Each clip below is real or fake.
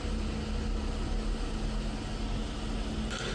real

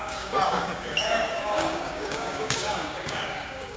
fake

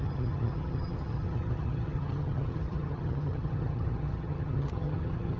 fake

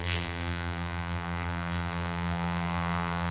fake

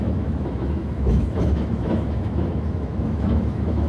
fake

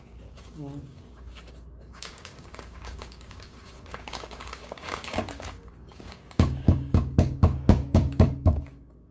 fake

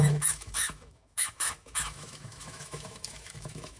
fake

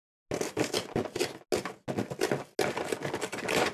real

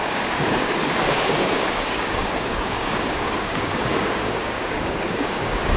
fake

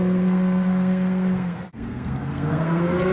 fake